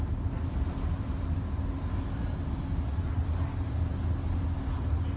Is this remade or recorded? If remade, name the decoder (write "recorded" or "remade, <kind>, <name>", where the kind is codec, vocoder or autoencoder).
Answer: recorded